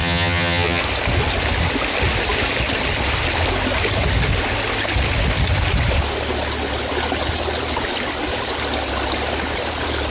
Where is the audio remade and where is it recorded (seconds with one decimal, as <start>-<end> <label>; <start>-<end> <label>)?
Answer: 0.0-0.8 remade; 0.8-10.1 recorded